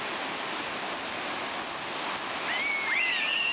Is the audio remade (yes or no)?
no